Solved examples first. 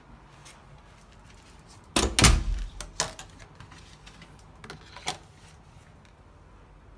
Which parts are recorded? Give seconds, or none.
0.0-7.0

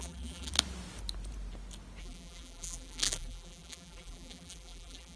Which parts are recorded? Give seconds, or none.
0.5-2.0

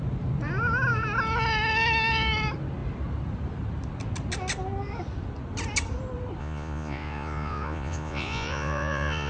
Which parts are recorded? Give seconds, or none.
0.0-6.4

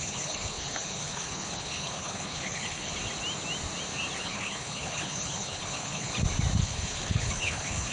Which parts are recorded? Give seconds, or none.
2.9-4.2; 6.1-6.6

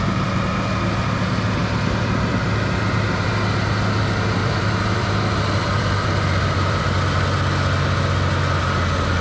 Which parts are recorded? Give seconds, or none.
0.0-1.6; 3.3-4.4; 6.9-9.2

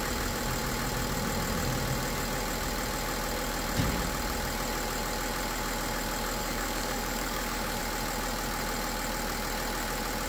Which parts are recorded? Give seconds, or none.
0.0-6.4; 7.8-10.3

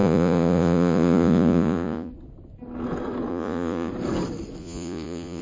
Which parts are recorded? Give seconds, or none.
2.1-3.3; 3.9-4.6

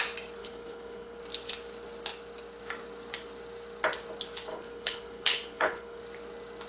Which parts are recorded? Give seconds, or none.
0.0-0.4; 1.2-4.5; 6.0-6.7